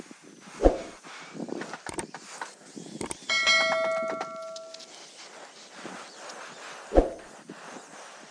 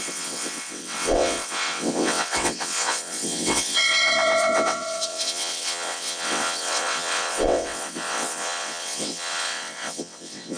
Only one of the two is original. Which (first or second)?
first